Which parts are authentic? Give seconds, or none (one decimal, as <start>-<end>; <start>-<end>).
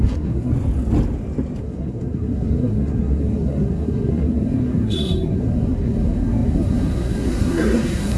0.5-1.6